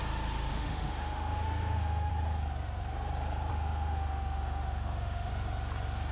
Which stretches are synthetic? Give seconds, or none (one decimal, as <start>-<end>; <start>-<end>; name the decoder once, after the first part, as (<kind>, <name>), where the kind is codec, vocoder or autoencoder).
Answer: 0.5-2.1 (autoencoder, DAC-VAE); 3.5-5.3